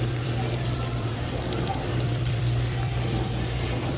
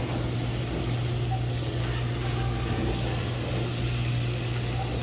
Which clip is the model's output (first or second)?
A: first